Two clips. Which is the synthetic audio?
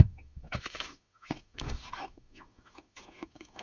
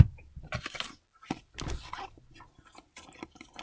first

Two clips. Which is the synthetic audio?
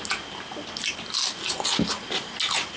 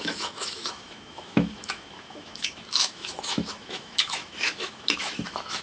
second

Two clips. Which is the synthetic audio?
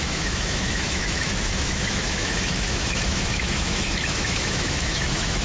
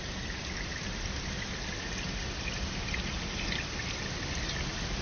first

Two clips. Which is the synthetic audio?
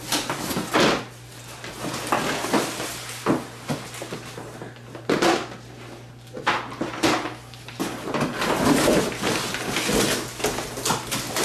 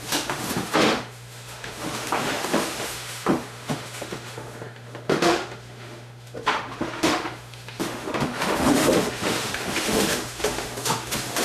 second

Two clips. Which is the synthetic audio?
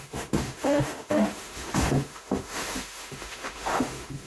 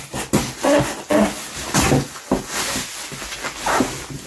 first